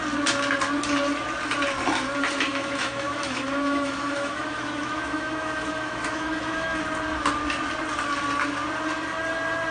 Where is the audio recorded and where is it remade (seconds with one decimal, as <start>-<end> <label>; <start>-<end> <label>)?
0.0-2.5 recorded; 2.5-6.8 remade; 6.8-9.7 recorded